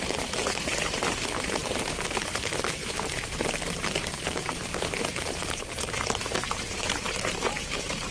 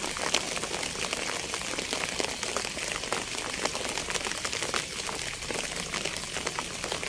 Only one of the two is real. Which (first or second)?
second